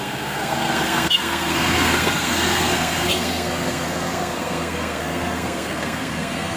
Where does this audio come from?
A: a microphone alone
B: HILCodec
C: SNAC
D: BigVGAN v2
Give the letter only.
C